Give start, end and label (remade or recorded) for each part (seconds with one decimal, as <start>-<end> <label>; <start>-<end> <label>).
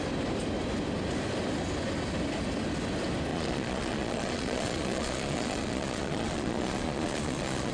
0.0-3.3 recorded; 3.3-7.7 remade